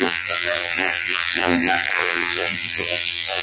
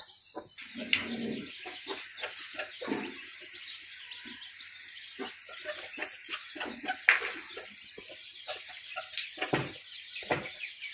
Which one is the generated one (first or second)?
first